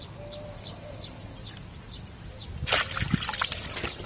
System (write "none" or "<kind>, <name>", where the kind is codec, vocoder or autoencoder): none